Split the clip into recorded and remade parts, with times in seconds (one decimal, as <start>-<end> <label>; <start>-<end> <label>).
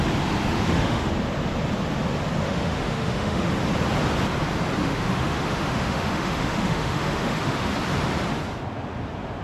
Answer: 0.0-0.4 recorded; 0.4-1.1 remade; 1.1-2.4 recorded; 2.4-3.5 remade; 3.5-4.8 recorded; 4.8-7.7 remade; 7.7-9.4 recorded